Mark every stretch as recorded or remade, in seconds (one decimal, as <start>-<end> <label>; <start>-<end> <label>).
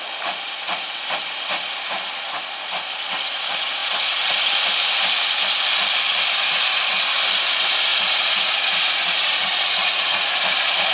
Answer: 0.0-7.9 recorded; 7.9-10.3 remade; 10.3-10.9 recorded